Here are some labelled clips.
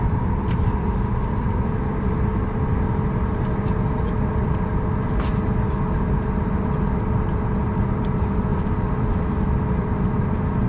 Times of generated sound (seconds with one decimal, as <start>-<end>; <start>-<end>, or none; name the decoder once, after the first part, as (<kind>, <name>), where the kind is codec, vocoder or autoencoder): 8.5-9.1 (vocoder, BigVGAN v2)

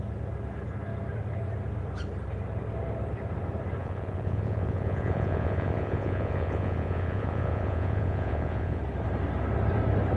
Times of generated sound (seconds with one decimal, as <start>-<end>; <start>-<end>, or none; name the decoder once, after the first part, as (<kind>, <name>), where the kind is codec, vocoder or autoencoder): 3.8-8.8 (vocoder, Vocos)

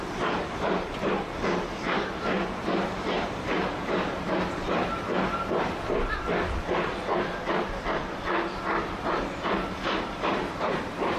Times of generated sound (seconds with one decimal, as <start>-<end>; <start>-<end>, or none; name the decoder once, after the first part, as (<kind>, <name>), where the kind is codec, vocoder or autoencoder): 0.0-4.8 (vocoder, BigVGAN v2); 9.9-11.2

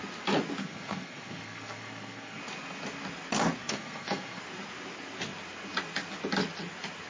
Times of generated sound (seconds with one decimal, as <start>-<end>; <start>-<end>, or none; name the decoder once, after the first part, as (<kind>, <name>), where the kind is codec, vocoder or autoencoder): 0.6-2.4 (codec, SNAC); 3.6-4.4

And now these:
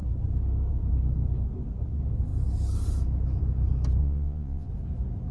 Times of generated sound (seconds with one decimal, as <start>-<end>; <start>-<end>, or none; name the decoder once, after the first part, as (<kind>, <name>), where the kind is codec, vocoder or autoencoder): 4.0-4.7 (vocoder, Vocos)

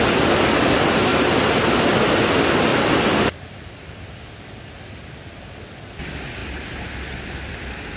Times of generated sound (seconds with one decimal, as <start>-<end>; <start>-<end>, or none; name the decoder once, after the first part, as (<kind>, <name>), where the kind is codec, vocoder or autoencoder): 1.1-1.7 (vocoder, BigVGAN v2); 2.7-5.6

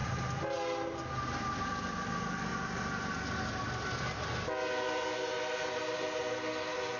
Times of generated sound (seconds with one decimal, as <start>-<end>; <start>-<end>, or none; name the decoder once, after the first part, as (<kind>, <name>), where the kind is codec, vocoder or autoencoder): 0.0-1.5 (vocoder, BigVGAN v2)